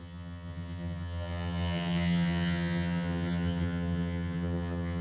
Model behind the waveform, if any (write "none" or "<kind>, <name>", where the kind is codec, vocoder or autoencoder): vocoder, HiFi-GAN